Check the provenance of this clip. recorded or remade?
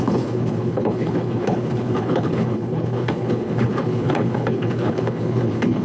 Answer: remade